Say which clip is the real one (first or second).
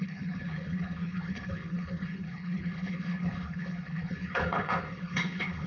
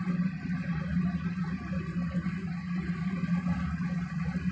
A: second